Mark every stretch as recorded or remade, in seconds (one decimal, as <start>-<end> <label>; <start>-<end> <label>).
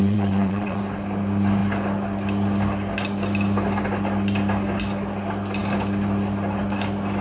0.0-0.8 remade; 0.8-7.2 recorded